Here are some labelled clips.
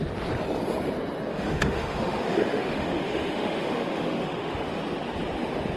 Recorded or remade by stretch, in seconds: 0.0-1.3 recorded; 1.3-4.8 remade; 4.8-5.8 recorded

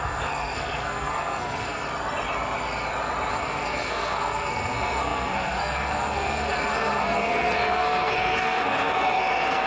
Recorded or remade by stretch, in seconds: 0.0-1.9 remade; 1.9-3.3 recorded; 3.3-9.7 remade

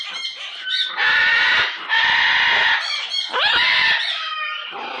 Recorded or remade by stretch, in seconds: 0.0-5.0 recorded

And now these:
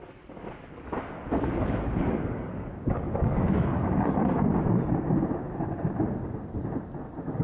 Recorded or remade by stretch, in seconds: 0.0-1.4 recorded; 1.4-2.7 remade; 2.7-3.2 recorded; 3.2-3.8 remade; 3.8-7.4 recorded